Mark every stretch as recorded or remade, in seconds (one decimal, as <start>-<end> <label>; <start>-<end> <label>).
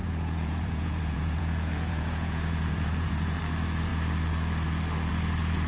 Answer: 0.0-3.4 remade; 3.4-5.7 recorded